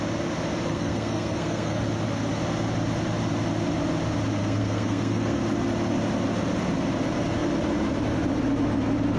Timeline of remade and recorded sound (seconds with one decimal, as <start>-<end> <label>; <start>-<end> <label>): 0.0-0.7 recorded; 0.7-1.8 remade; 1.8-4.4 recorded; 4.4-5.4 remade; 5.4-9.2 recorded